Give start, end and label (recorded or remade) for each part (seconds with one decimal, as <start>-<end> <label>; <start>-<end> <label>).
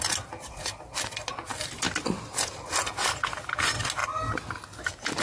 0.0-5.2 recorded